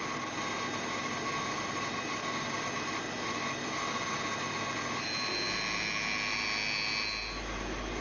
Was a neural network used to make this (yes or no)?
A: no